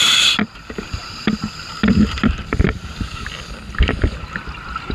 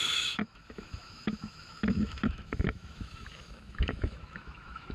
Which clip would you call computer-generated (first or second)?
second